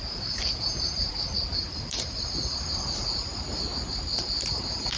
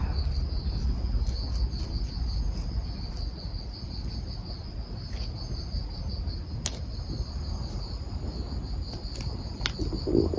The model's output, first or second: first